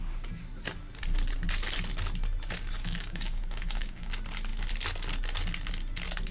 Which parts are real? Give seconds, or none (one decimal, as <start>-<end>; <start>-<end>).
0.0-2.8; 4.1-6.3